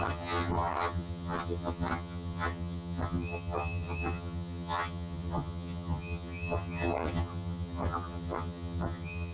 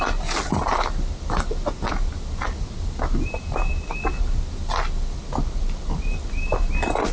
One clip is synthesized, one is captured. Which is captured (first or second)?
second